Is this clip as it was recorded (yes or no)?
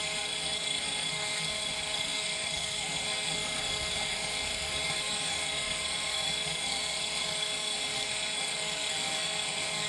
no